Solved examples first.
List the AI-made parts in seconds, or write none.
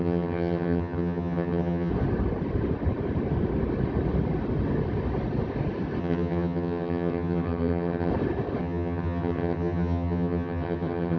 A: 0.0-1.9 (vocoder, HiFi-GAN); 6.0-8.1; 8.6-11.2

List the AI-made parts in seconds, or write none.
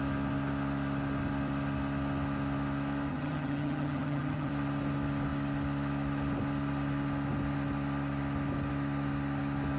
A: 3.1-4.5 (vocoder, HiFi-GAN)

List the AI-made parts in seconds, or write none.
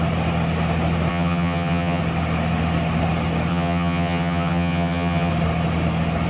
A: 1.1-2.0 (vocoder, HiFi-GAN); 3.5-5.3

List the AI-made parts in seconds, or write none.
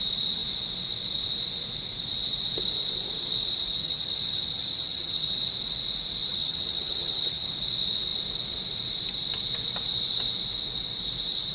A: 3.8-5.3 (vocoder, HiFi-GAN); 6.3-7.5